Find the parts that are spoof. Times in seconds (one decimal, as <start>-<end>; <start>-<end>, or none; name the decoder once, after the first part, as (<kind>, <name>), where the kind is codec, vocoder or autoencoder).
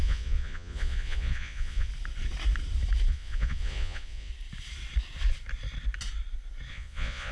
0.0-1.9 (vocoder, Vocos); 3.1-4.3; 6.7-7.3